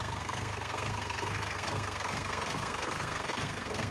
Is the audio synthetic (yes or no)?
yes